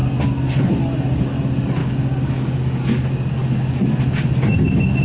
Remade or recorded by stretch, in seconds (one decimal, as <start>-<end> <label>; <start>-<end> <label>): 0.0-1.8 recorded; 1.8-3.1 remade; 3.1-5.0 recorded